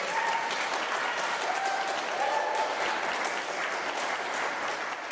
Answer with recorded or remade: recorded